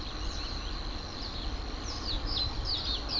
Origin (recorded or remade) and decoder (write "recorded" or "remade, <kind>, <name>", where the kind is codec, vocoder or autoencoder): recorded